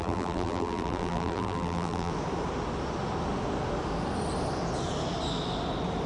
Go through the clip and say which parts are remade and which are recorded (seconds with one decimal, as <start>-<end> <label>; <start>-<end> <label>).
0.0-2.1 remade; 2.1-6.1 recorded